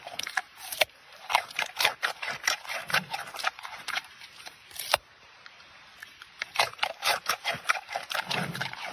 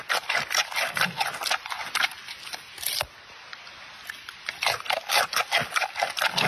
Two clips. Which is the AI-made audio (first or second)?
first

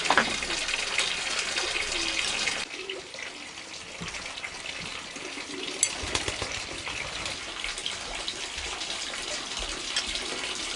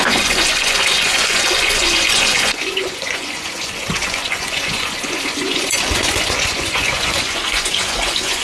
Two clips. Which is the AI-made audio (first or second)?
second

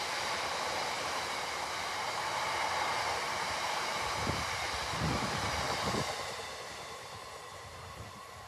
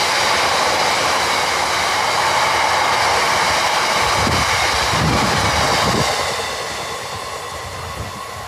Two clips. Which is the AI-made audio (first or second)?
first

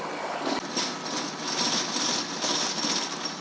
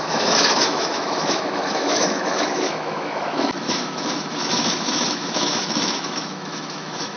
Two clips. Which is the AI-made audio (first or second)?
second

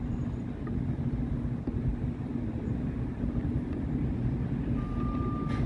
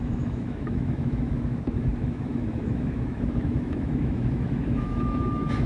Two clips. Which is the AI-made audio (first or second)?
second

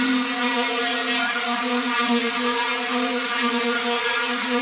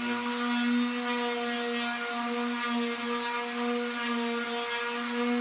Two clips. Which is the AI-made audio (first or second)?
first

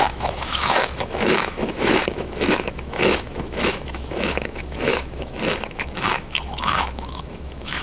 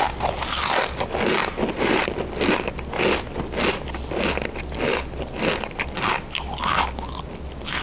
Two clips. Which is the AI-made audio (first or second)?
first